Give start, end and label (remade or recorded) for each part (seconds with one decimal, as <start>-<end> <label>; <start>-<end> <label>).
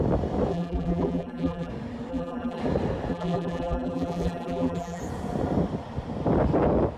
0.0-0.5 recorded; 0.5-1.7 remade; 1.7-2.1 recorded; 2.1-2.6 remade; 2.6-3.1 recorded; 3.1-5.0 remade; 5.0-7.0 recorded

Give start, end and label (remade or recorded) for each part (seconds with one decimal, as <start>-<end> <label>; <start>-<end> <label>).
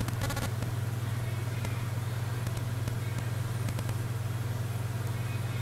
0.0-5.6 recorded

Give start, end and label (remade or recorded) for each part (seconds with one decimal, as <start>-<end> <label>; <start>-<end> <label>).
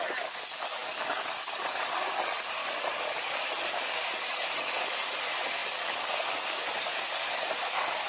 0.0-8.1 remade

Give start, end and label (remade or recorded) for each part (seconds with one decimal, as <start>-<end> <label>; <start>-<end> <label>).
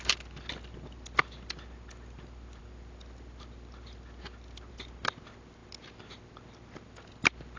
0.0-7.6 recorded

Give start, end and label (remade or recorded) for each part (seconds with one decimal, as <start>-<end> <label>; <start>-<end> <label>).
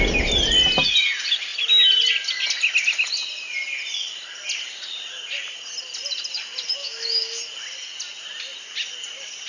0.0-6.8 recorded; 6.8-7.4 remade; 7.4-9.5 recorded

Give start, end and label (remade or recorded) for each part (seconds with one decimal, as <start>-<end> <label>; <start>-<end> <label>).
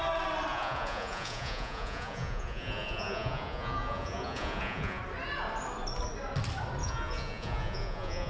0.0-0.5 recorded; 0.5-5.0 remade; 5.0-6.8 recorded; 6.8-8.3 remade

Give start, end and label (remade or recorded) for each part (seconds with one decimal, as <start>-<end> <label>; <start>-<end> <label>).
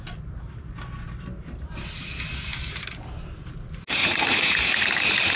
0.0-4.0 recorded; 4.0-4.6 remade; 4.6-5.4 recorded